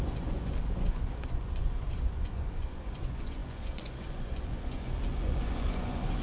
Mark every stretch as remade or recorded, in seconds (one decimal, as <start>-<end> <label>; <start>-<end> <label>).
0.0-6.2 remade